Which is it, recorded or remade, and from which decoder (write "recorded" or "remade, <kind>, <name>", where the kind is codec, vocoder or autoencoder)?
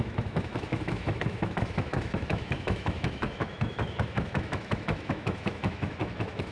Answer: remade, autoencoder, DAC-VAE